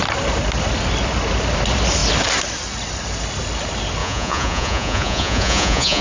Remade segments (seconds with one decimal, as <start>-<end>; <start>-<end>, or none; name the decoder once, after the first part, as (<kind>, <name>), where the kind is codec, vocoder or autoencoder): 4.0-6.0 (vocoder, Vocos)